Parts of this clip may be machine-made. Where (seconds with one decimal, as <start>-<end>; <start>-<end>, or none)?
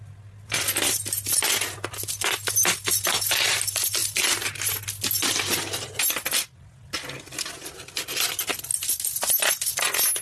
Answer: none